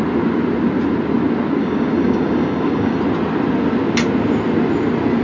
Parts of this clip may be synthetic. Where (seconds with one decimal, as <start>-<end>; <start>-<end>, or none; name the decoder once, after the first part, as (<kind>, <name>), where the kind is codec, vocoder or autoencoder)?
1.6-3.0 (codec, DAC)